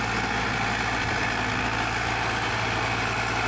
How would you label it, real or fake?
real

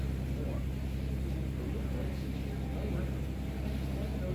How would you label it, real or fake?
real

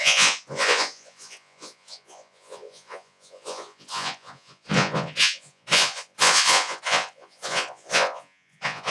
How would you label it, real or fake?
fake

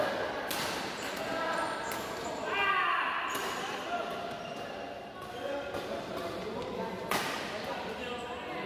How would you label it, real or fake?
real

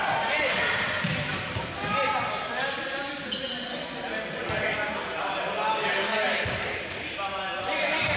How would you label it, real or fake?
real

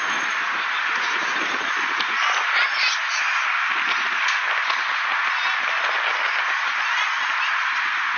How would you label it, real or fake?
real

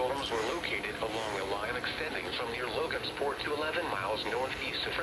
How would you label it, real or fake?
real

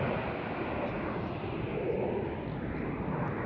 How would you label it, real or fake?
real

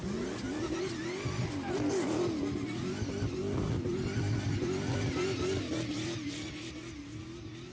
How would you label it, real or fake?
real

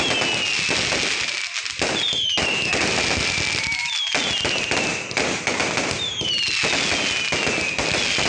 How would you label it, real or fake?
real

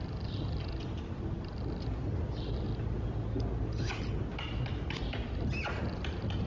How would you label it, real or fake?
real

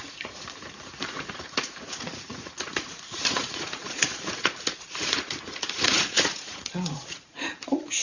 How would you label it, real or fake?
fake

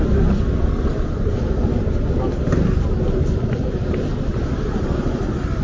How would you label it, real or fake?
real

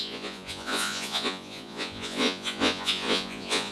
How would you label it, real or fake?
fake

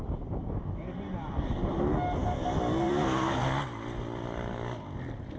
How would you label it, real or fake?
real